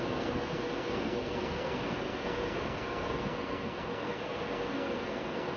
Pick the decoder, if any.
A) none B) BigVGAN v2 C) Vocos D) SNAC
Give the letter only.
D